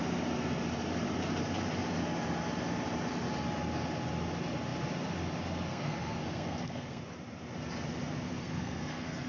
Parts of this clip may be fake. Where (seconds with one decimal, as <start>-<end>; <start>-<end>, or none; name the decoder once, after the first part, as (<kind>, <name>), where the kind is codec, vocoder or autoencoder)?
5.7-7.0 (codec, SNAC); 8.3-9.3